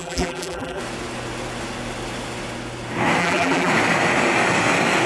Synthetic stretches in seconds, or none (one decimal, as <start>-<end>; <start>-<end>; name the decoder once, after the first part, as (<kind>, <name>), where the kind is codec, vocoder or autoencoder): 0.0-0.8 (vocoder, BigVGAN v2); 3.2-3.7